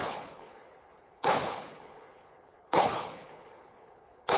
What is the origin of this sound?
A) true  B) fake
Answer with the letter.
B